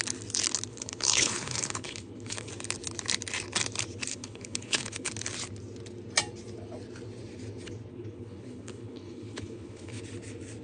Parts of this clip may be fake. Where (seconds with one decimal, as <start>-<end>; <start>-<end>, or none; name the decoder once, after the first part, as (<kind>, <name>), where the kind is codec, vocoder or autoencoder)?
0.7-2.5 (codec, HILCodec); 4.1-5.1; 7.9-10.0